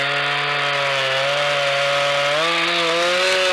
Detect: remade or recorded recorded